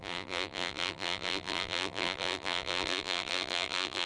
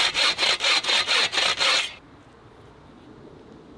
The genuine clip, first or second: second